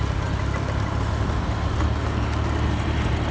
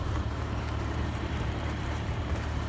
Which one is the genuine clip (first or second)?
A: first